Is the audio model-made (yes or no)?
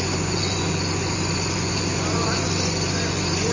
yes